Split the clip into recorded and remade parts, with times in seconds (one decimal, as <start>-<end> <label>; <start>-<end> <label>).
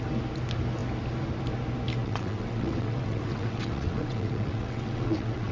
0.0-2.0 recorded; 2.0-5.5 remade